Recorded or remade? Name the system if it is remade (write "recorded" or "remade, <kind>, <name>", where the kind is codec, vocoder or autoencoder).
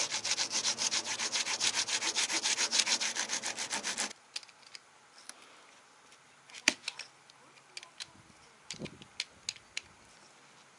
recorded